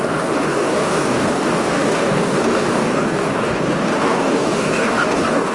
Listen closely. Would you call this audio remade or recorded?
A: remade